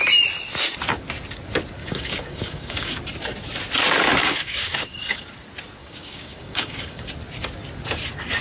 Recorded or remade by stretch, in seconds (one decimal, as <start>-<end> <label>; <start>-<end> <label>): 0.0-1.8 recorded; 1.8-3.0 remade; 3.0-4.2 recorded; 4.2-5.2 remade; 5.2-5.8 recorded; 5.8-7.1 remade; 7.1-8.4 recorded